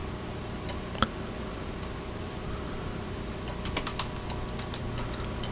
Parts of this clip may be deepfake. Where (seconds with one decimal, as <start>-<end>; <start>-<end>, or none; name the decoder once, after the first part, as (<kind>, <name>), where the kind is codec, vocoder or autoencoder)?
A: 0.0-3.3 (vocoder, BigVGAN v2)